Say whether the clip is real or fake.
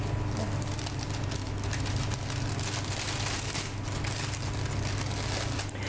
real